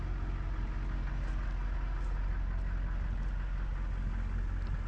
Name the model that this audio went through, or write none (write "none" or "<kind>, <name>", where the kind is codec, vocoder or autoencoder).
none